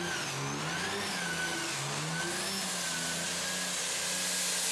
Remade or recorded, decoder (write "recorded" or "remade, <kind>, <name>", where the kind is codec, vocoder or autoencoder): recorded